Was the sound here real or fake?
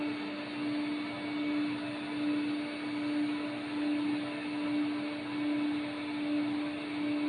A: real